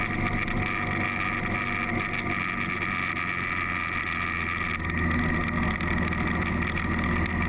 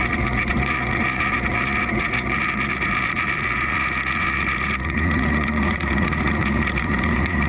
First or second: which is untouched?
first